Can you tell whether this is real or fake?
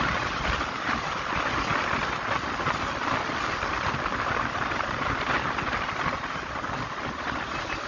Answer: real